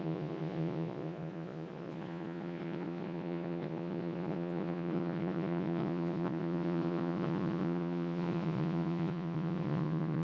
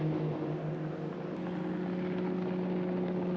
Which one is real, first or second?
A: second